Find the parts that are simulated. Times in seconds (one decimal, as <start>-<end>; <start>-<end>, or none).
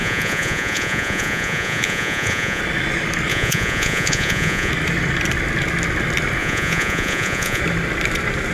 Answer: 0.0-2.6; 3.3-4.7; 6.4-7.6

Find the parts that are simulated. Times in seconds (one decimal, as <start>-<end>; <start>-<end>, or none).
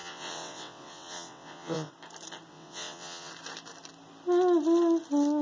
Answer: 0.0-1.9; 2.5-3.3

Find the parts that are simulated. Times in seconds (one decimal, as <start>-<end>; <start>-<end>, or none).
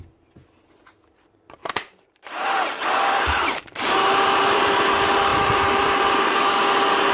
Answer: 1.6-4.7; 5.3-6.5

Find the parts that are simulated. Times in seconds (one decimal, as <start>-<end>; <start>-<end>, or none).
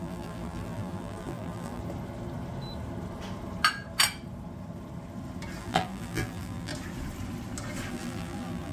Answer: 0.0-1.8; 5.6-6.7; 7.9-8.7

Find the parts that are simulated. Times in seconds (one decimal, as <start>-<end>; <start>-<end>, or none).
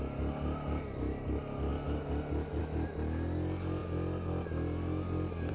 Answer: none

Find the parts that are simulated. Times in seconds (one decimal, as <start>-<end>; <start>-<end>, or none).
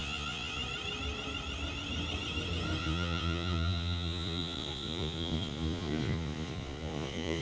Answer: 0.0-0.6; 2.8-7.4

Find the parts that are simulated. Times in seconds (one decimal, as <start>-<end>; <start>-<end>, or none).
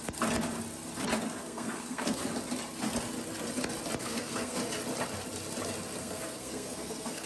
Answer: 1.4-2.3; 4.0-4.6; 6.0-7.3